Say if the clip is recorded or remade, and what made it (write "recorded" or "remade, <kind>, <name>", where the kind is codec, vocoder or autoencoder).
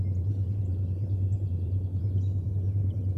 remade, vocoder, BigVGAN v2